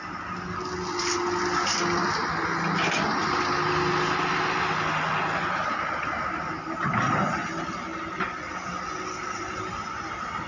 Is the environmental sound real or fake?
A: real